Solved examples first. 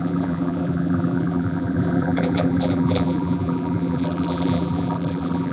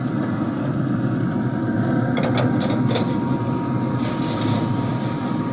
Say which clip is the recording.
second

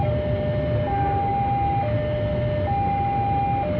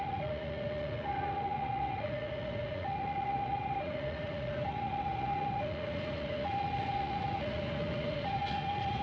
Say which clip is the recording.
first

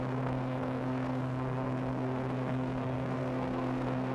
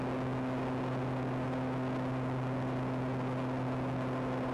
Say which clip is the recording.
second